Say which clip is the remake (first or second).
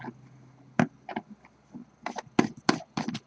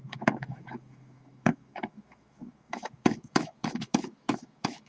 second